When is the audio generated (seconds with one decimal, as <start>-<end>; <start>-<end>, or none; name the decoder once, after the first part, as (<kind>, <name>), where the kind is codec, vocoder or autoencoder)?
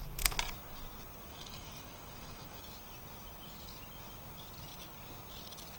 1.3-2.6 (autoencoder, DAC-VAE)